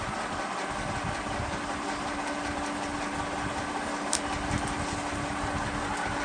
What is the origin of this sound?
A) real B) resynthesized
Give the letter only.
A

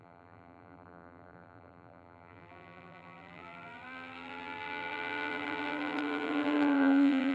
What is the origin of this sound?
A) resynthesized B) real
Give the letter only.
A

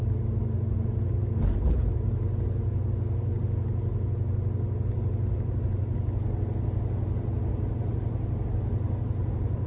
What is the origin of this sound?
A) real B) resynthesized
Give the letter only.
A